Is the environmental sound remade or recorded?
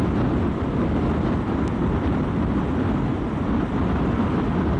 recorded